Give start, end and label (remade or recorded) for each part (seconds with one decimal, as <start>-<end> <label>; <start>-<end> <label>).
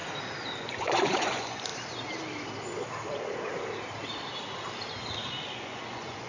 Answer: 0.0-0.6 recorded; 0.6-1.7 remade; 1.7-5.5 recorded; 5.5-6.3 remade